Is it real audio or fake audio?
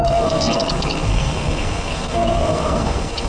fake